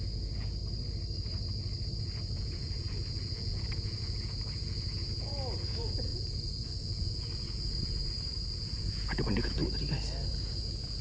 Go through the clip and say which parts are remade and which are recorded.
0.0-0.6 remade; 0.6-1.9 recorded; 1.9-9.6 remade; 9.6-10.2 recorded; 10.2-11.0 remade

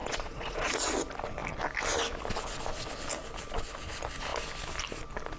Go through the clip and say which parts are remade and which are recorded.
0.0-0.9 remade; 0.9-5.4 recorded

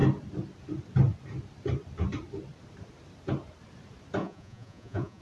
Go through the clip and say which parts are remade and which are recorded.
0.0-4.2 recorded; 4.2-5.2 remade